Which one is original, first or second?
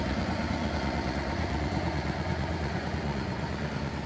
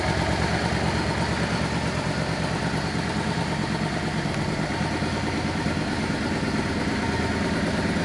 second